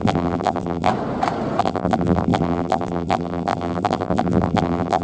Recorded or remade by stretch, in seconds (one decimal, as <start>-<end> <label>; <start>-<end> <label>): 0.0-0.9 remade; 0.9-1.6 recorded; 1.6-5.0 remade